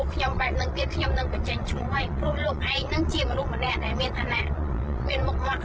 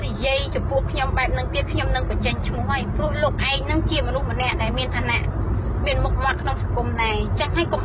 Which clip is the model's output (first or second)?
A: first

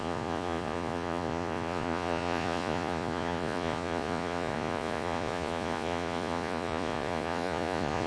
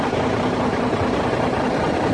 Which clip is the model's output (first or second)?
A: first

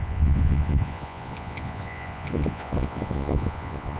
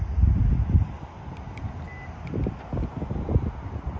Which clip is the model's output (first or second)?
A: first